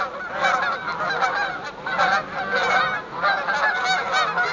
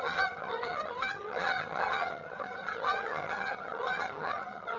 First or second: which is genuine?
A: first